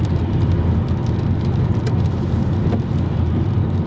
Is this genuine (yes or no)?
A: yes